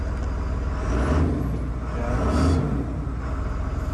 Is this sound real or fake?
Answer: real